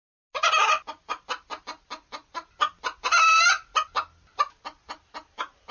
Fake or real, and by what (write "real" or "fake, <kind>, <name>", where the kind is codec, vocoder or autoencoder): real